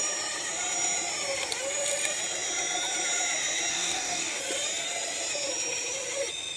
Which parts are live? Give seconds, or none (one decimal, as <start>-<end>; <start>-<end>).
0.0-3.7; 4.4-6.6